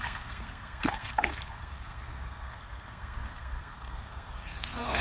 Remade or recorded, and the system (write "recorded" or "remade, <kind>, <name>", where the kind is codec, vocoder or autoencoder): remade, codec, SNAC